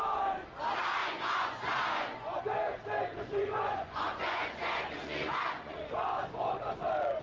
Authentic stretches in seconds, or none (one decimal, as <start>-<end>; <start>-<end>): 0.0-1.0; 2.4-3.1